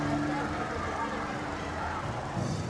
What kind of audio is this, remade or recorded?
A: remade